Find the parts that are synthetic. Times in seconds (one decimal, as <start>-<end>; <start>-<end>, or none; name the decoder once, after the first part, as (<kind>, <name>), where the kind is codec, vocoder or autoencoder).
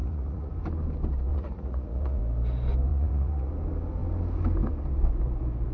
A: 0.0-0.5 (vocoder, Vocos); 1.3-2.2; 2.9-3.5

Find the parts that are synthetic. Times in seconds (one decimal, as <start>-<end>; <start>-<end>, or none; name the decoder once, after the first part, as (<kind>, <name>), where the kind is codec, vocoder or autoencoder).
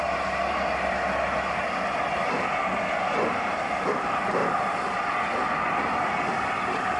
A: none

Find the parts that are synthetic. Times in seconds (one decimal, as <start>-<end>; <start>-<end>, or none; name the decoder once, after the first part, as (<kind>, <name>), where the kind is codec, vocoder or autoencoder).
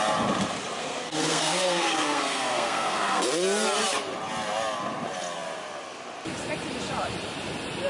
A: 0.8-3.2 (codec, SNAC)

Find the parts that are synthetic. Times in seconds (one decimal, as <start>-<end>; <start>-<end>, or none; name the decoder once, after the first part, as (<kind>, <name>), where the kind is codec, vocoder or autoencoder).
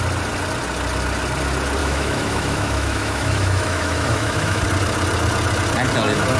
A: 1.8-4.6 (autoencoder, DAC-VAE)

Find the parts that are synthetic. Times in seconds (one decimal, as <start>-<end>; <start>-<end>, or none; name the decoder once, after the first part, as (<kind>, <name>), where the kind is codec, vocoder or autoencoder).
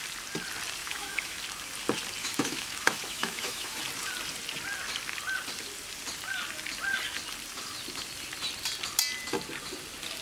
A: 0.8-1.4 (autoencoder, DAC-VAE); 2.2-3.8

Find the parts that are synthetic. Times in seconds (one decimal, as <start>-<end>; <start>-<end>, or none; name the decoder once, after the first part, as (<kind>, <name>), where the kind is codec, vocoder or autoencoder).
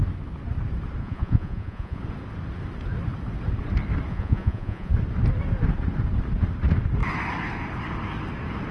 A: 1.0-2.0 (vocoder, Vocos); 4.1-4.9